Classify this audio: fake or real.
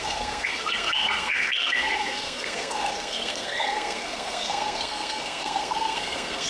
fake